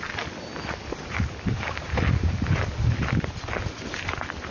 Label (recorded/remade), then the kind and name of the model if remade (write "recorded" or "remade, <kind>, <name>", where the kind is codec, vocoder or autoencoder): recorded